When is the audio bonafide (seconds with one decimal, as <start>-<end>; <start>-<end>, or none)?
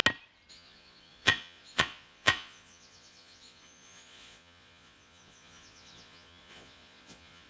0.0-0.5